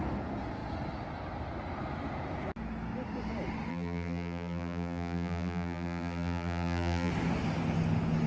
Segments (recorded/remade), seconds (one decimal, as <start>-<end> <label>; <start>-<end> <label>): 0.0-3.7 recorded; 3.7-7.1 remade; 7.1-8.3 recorded